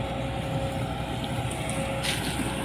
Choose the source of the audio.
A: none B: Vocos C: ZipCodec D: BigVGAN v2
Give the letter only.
A